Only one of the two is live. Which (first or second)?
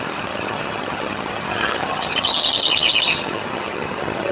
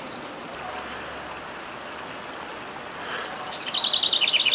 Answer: second